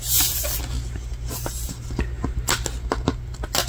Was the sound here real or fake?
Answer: real